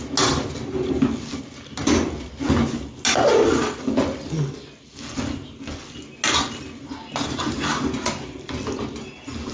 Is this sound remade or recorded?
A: recorded